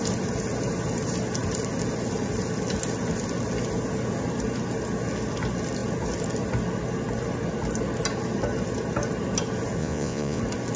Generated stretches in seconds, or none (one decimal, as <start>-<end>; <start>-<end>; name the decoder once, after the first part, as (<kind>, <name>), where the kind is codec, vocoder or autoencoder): 9.8-10.4 (vocoder, Vocos)